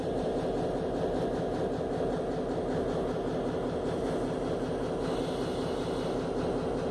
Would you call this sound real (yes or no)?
yes